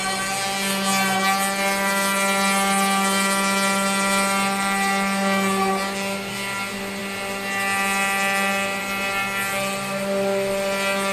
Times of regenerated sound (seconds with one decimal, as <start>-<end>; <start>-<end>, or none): none